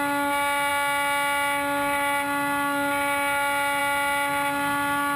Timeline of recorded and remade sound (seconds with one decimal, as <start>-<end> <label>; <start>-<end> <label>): 0.0-5.2 recorded